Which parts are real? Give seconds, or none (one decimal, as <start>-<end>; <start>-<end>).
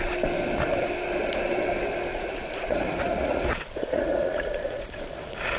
0.0-2.1